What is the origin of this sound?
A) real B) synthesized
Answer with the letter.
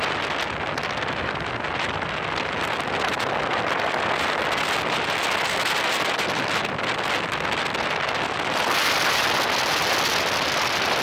A